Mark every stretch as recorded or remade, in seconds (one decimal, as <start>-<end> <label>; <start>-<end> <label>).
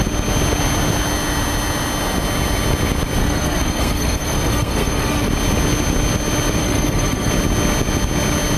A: 0.0-3.2 recorded; 3.2-5.3 remade; 5.3-6.6 recorded; 6.6-7.3 remade; 7.3-8.6 recorded